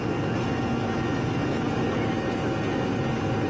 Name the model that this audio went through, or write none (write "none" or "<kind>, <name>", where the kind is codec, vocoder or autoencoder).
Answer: none